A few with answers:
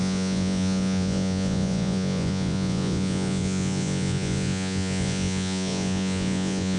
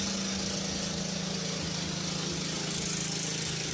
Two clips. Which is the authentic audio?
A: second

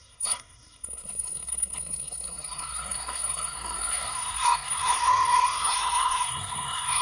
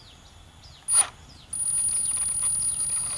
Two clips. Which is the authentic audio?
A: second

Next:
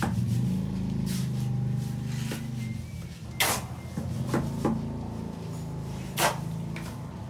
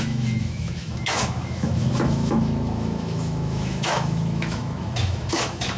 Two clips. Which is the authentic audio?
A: first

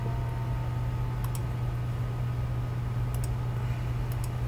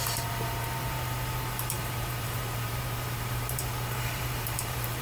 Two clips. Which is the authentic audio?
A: first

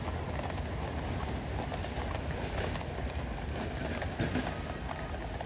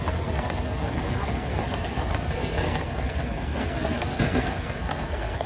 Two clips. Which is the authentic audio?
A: first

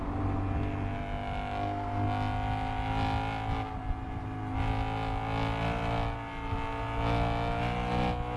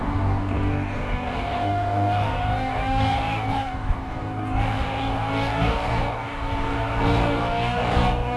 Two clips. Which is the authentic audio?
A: first